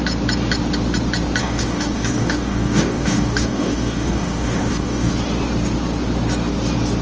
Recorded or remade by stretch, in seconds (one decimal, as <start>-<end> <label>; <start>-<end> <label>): 0.0-1.4 recorded; 1.4-5.1 remade; 5.1-7.0 recorded